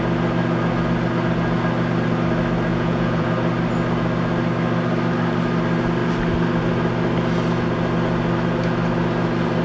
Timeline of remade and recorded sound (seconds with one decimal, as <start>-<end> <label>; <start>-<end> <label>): 0.0-2.7 recorded; 2.7-3.3 remade; 3.3-9.6 recorded